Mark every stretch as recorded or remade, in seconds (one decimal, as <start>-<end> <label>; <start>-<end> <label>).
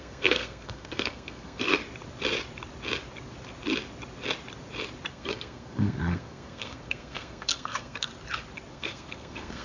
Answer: 0.0-1.8 remade; 1.8-5.1 recorded; 5.1-8.1 remade; 8.1-8.7 recorded; 8.7-9.6 remade